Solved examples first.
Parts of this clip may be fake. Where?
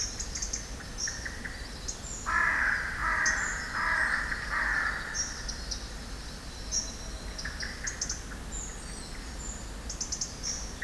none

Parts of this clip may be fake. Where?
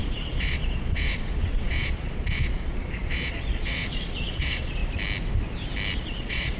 0.0-4.8 (vocoder, Vocos); 6.0-6.6